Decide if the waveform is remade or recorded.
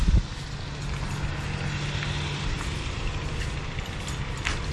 recorded